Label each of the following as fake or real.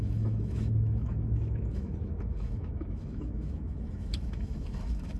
fake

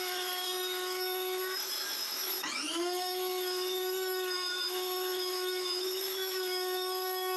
fake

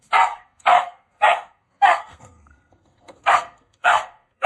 fake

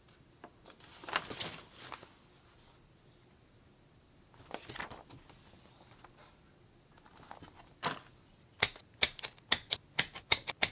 real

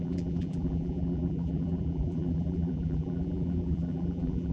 fake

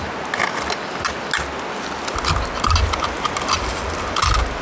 real